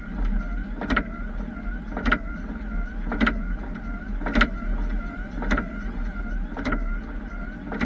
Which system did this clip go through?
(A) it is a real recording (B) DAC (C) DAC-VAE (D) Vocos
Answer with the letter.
A